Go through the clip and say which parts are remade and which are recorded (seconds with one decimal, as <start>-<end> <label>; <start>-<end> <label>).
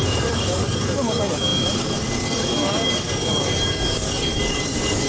0.0-5.1 remade